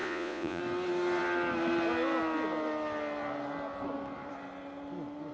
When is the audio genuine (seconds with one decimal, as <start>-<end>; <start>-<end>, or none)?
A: 0.6-5.3